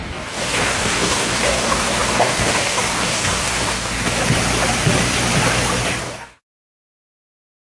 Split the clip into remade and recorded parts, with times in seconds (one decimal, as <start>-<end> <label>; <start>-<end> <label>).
0.0-4.2 remade; 4.2-6.0 recorded; 6.0-7.6 remade